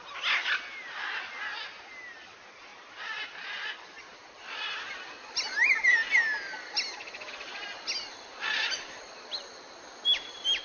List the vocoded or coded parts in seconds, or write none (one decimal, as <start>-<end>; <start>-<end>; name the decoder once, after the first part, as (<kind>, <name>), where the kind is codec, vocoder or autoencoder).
none